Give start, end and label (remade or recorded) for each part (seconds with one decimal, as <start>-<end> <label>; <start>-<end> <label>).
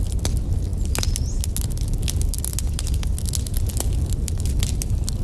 0.0-5.2 recorded